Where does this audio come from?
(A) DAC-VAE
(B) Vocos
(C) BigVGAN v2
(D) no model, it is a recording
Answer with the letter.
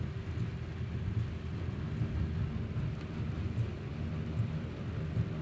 D